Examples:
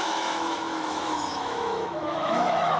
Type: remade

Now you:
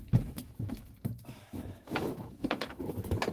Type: remade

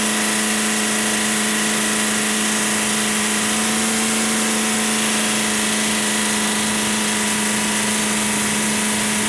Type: recorded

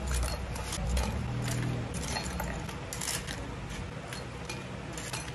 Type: recorded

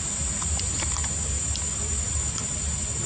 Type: recorded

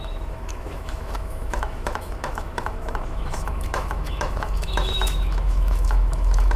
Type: remade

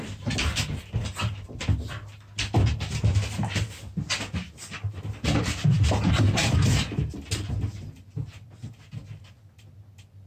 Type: recorded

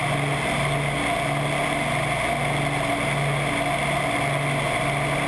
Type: recorded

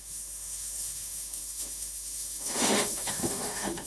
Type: remade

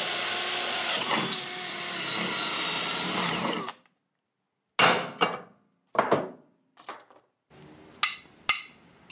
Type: recorded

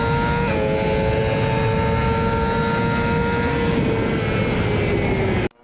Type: recorded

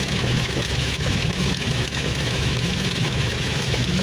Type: remade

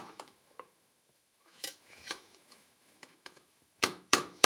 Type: remade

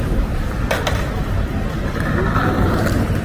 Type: recorded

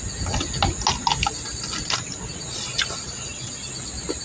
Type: recorded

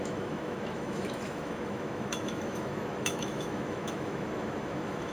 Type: remade